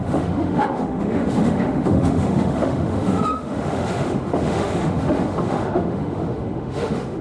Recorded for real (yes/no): no